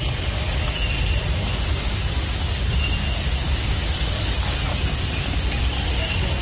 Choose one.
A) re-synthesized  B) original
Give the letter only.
B